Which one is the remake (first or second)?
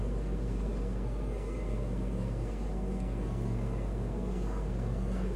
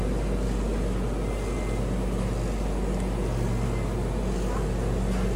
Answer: first